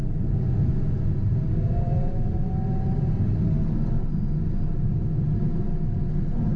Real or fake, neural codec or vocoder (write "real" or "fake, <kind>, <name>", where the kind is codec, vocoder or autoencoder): real